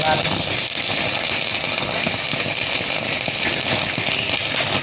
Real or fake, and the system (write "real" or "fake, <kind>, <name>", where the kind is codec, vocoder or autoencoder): real